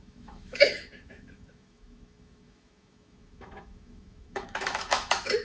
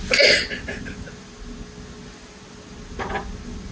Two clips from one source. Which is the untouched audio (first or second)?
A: second